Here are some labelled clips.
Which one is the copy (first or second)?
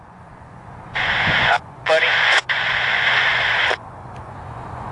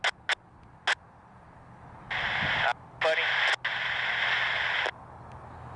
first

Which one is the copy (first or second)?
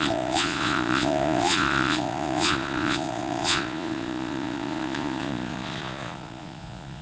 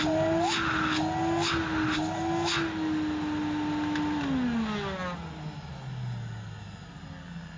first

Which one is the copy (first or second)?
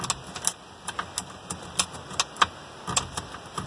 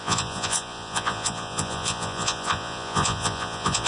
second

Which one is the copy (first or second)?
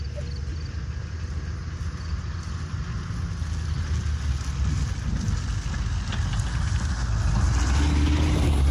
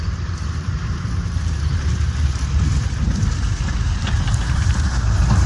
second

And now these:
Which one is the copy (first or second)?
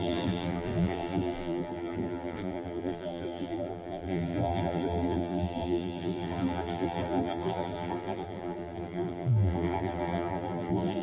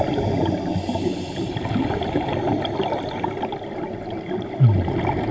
first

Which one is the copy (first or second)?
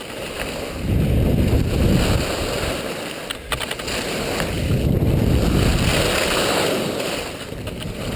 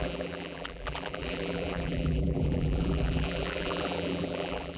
second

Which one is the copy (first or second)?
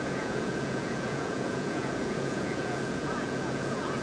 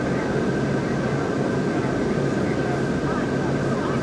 first